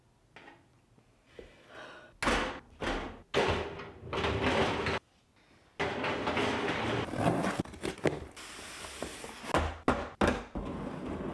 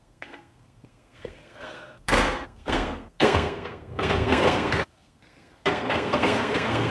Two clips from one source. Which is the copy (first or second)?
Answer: second